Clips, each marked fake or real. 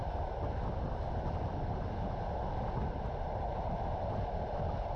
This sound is real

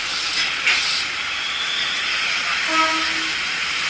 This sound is real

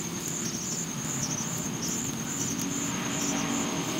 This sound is real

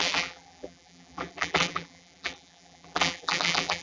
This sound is fake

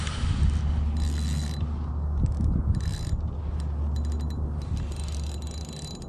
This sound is real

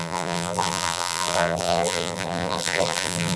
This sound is fake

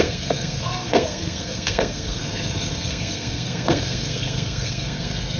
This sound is fake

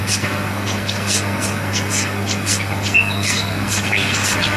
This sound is fake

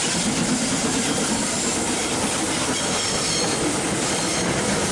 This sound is real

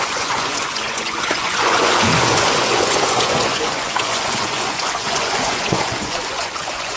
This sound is fake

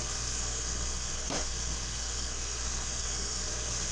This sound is fake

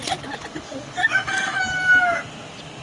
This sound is real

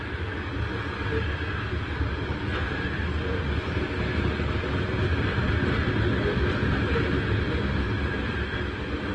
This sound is real